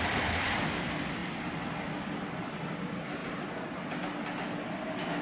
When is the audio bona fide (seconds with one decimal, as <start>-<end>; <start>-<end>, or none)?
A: 0.0-5.2

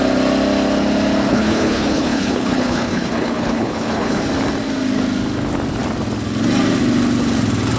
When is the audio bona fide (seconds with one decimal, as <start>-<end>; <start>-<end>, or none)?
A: 0.0-1.3; 4.2-7.8

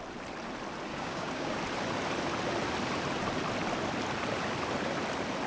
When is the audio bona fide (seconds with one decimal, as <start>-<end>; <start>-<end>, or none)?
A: 0.0-0.9; 1.6-5.5

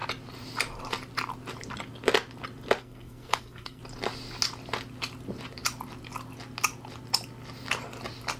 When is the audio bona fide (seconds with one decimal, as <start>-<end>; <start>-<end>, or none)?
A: 0.0-2.8; 3.8-8.4

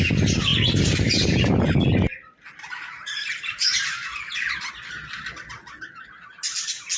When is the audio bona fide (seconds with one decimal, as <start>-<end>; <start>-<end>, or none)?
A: 0.0-0.5; 4.7-7.0

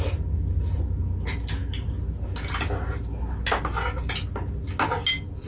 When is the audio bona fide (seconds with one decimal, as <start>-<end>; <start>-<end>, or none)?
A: 0.0-5.5

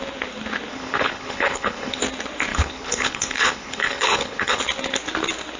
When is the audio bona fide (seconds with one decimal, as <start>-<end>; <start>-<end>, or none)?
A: 0.0-0.7; 2.0-2.5; 4.6-5.6

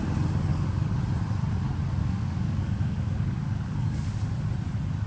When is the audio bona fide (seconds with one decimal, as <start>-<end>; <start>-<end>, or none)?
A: 0.0-0.5; 1.0-2.0; 4.1-5.1